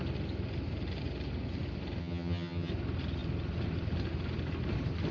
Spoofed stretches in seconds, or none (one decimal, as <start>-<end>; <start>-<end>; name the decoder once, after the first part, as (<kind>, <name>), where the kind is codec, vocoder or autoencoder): 2.0-2.7 (vocoder, HiFi-GAN)